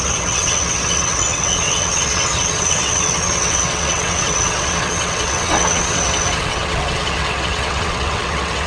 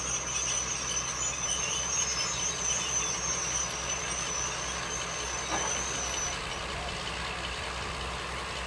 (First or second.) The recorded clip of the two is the second